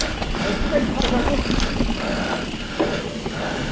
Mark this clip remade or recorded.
recorded